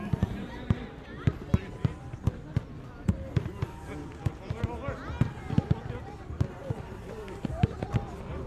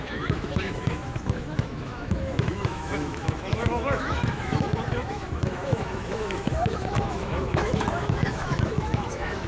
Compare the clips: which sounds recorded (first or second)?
first